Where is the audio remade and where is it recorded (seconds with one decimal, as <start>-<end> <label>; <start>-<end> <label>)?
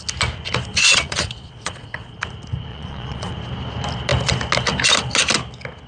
0.0-0.7 recorded; 0.7-2.2 remade; 2.2-2.7 recorded; 2.7-3.3 remade; 3.3-5.9 recorded